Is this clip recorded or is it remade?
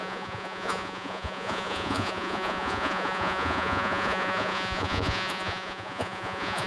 remade